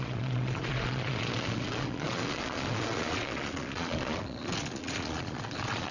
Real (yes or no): no